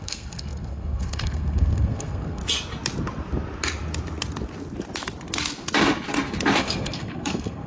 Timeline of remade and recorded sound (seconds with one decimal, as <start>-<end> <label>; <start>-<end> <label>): 0.0-2.4 remade; 2.4-6.6 recorded; 6.6-7.7 remade